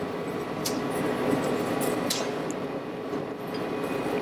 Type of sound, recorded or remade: recorded